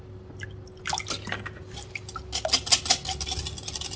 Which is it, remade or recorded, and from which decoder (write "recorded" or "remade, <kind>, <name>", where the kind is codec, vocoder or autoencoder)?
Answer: recorded